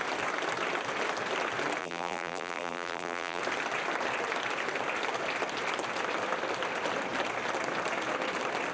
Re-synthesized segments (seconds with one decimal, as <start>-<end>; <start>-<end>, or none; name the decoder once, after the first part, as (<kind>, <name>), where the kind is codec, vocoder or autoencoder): 1.8-3.4 (vocoder, BigVGAN v2)